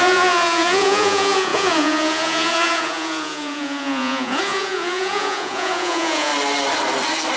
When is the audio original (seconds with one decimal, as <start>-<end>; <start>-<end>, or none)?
6.3-7.4